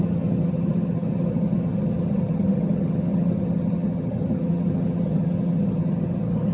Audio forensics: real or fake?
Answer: fake